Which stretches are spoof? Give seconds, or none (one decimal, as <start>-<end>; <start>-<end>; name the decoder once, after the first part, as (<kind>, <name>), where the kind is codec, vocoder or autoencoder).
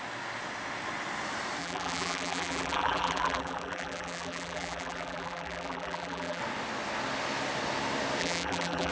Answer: 1.6-6.4 (vocoder, BigVGAN v2); 8.2-8.9